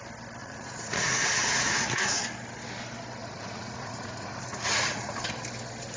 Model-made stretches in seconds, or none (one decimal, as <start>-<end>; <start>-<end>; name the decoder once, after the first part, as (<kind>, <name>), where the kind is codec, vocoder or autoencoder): 0.4-2.2 (vocoder, Vocos); 3.2-5.3